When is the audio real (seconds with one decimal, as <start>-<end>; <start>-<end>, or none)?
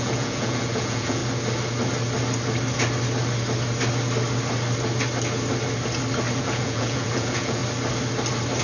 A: 1.2-6.4; 7.6-8.6